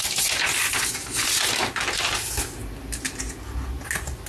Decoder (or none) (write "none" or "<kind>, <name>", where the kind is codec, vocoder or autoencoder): none